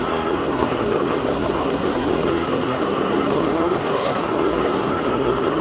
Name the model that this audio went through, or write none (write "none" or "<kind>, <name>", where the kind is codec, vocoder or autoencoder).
codec, SNAC